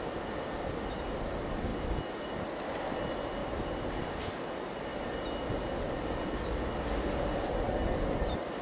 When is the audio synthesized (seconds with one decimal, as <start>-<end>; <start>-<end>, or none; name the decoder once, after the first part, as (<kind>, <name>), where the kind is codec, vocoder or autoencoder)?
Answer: 3.4-4.2 (vocoder, BigVGAN v2)

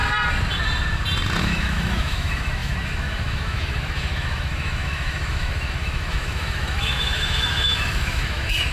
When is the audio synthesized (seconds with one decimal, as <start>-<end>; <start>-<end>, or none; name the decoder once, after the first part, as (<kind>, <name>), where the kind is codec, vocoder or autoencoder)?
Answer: 1.4-8.7 (autoencoder, DAC-VAE)